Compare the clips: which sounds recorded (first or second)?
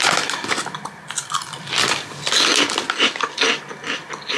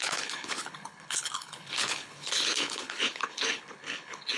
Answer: first